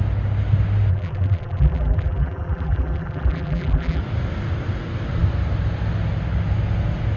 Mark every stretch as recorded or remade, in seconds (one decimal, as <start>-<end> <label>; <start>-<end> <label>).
0.0-0.9 recorded; 0.9-4.0 remade; 4.0-7.2 recorded